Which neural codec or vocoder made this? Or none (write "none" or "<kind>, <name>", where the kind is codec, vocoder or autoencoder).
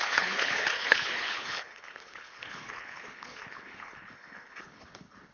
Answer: codec, HILCodec